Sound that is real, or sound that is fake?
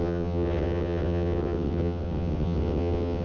fake